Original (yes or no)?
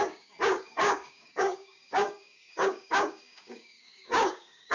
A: no